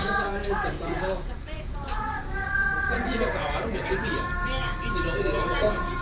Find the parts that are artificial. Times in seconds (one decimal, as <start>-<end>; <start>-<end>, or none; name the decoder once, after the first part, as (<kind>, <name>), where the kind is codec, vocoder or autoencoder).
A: 0.0-3.8 (vocoder, Vocos); 5.3-6.0